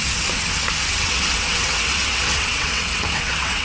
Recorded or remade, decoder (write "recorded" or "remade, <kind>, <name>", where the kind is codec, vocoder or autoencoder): remade, vocoder, WaveNeXt